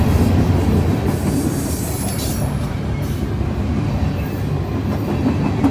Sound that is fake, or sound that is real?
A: real